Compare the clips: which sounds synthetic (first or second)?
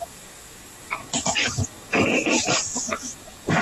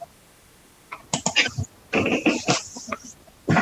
first